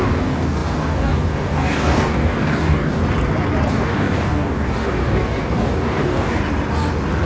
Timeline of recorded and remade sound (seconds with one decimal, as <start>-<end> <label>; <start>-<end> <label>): 0.0-3.0 remade; 3.0-3.7 recorded; 3.7-6.4 remade; 6.4-7.3 recorded